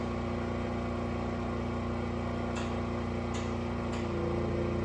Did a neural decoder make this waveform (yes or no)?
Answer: no